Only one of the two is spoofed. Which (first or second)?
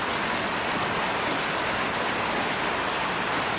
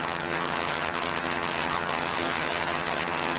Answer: second